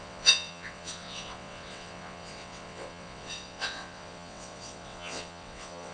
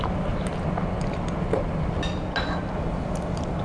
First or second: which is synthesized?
first